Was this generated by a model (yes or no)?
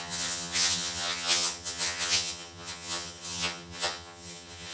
yes